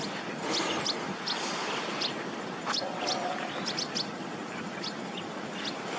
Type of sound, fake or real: real